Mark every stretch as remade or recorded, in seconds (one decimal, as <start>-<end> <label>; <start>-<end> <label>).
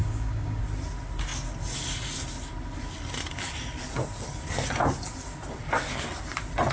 0.0-0.6 remade; 0.6-6.7 recorded